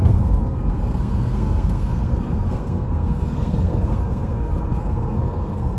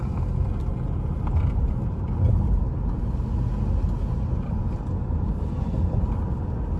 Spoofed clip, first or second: first